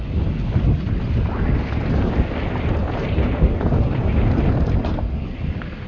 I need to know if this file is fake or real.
real